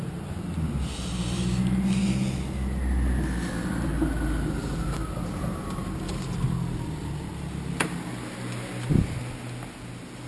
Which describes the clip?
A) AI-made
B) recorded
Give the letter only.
B